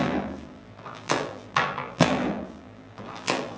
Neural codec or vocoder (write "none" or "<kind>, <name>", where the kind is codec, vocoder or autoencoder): vocoder, BigVGAN v2